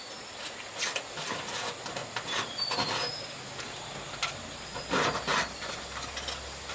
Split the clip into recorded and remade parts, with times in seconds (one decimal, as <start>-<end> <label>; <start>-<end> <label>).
0.0-6.7 recorded